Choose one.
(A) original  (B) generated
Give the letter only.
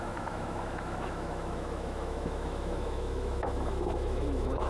B